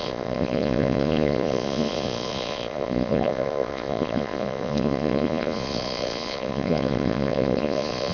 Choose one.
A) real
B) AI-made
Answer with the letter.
B